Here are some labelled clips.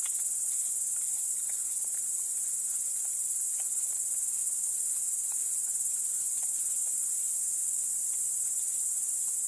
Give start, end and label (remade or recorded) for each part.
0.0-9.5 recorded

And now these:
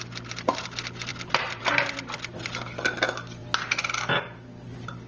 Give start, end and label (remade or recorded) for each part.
0.0-5.1 recorded

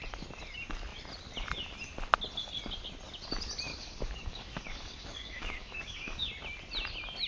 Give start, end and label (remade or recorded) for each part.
0.0-3.7 recorded; 3.7-6.3 remade; 6.3-7.3 recorded

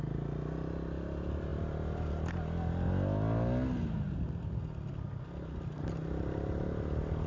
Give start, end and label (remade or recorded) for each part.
0.0-7.3 recorded